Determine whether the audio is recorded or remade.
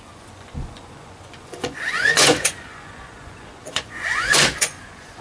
remade